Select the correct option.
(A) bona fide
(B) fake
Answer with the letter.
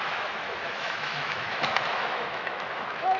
B